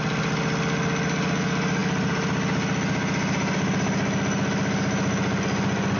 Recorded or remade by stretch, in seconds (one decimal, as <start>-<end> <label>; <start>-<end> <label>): 0.0-6.0 recorded